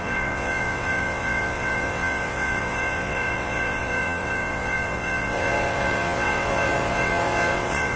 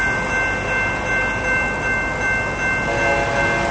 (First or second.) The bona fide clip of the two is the second